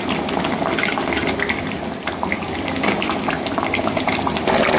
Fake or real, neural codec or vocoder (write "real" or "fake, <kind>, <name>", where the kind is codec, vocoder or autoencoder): real